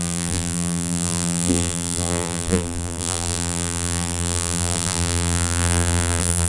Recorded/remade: remade